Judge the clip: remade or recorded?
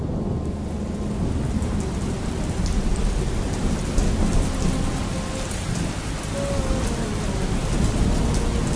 recorded